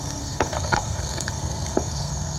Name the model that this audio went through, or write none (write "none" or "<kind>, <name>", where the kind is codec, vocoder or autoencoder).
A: codec, SNAC